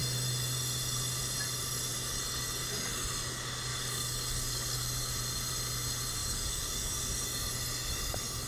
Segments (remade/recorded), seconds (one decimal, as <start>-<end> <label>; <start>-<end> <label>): 0.0-3.7 recorded; 3.7-5.1 remade; 5.1-6.2 recorded; 6.2-6.9 remade; 6.9-8.5 recorded